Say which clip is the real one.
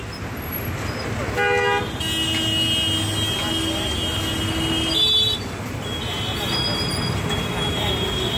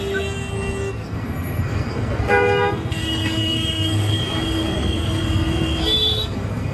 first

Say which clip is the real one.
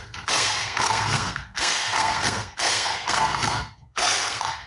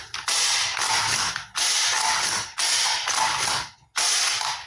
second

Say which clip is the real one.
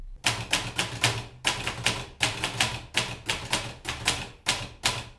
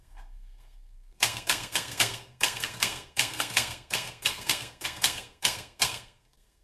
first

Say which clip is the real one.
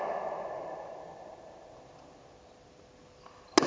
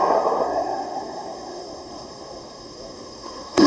first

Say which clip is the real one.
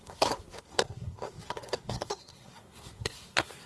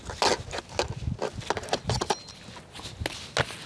second